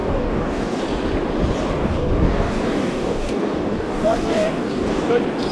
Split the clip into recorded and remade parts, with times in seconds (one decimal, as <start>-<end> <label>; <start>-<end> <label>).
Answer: 0.0-0.8 remade; 0.8-1.8 recorded; 1.8-5.1 remade; 5.1-5.5 recorded